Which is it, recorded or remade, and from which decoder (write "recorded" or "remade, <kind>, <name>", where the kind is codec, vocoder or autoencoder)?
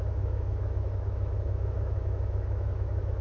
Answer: remade, autoencoder, DAC-VAE